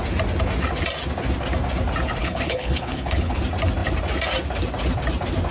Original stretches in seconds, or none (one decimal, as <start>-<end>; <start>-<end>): 0.0-2.2; 3.4-5.5